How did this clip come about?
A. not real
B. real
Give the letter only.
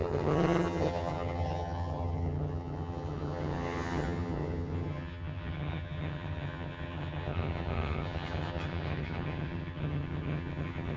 A